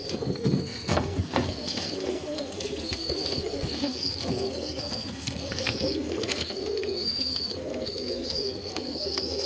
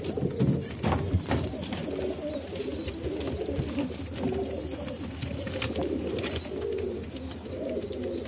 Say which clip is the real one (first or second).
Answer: second